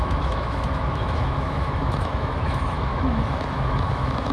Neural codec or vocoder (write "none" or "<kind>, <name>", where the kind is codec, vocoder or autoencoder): autoencoder, DAC-VAE